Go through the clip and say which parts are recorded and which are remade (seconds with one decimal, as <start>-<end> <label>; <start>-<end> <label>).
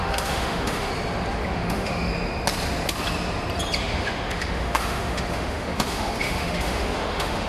0.0-0.9 remade; 0.9-1.5 recorded; 1.5-2.1 remade; 2.1-3.8 recorded; 3.8-7.5 remade